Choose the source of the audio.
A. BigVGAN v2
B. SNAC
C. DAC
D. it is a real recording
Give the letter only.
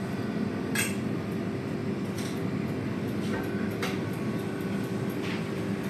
D